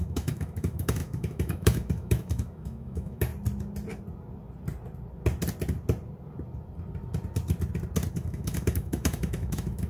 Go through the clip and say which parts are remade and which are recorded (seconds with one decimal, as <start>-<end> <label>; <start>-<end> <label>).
0.0-3.3 remade; 3.3-8.1 recorded; 8.1-9.9 remade